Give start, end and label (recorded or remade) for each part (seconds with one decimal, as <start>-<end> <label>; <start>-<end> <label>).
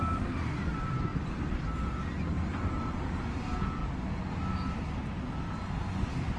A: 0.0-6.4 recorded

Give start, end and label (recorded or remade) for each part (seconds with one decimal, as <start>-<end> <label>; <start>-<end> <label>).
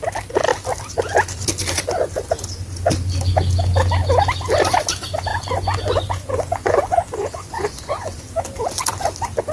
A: 0.0-5.3 recorded; 5.3-8.3 remade; 8.3-9.5 recorded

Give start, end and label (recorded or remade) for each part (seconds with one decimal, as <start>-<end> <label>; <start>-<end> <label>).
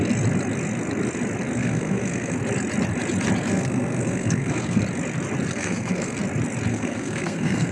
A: 0.0-1.6 recorded; 1.6-2.4 remade; 2.4-3.4 recorded; 3.4-4.8 remade; 4.8-5.5 recorded; 5.5-6.2 remade; 6.2-6.7 recorded; 6.7-7.7 remade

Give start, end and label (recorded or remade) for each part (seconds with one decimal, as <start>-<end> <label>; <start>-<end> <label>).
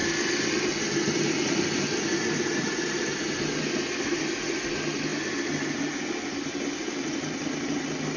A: 0.0-8.2 recorded